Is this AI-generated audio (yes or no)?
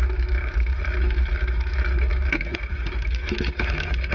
yes